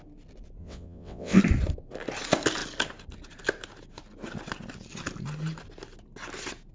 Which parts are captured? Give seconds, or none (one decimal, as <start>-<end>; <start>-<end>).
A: 0.0-0.6; 1.4-6.7